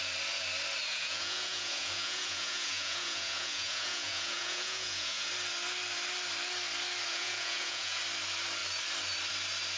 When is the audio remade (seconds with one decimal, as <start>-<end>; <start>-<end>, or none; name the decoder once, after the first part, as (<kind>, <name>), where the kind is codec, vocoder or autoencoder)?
0.9-5.3 (vocoder, Vocos); 7.1-8.0